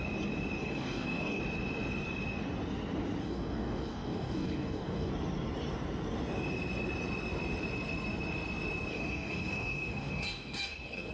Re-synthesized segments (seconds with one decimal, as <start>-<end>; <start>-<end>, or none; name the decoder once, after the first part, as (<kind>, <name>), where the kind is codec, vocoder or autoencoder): 0.6-1.4 (codec, DAC); 3.2-5.1; 8.9-11.1